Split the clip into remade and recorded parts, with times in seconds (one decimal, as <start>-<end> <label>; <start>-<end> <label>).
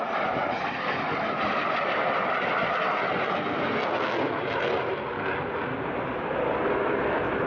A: 0.0-7.5 recorded